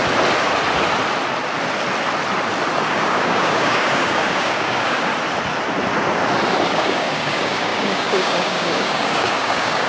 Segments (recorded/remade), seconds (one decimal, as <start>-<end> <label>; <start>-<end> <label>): 0.0-2.8 recorded; 2.8-5.1 remade; 5.1-6.7 recorded; 6.7-9.9 remade